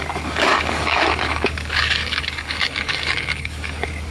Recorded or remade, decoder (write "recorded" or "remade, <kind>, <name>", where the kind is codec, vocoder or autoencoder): remade, codec, DAC